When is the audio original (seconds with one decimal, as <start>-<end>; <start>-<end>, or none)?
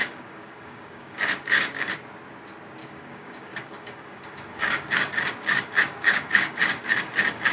1.9-2.8